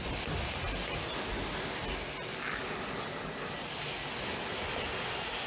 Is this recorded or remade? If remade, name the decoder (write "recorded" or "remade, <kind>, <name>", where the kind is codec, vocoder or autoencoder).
recorded